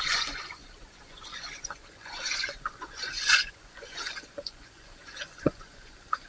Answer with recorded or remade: remade